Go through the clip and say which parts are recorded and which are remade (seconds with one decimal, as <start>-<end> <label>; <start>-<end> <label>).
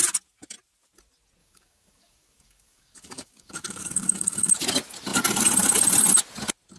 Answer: 0.0-1.4 recorded; 1.4-4.5 remade; 4.5-6.8 recorded